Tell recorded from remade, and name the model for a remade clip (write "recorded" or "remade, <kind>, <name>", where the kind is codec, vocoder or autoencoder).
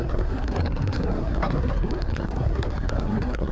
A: remade, codec, SNAC